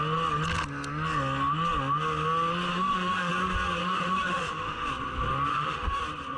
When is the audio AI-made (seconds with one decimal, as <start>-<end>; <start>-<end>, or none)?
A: 2.7-3.3; 3.8-4.9; 5.5-6.0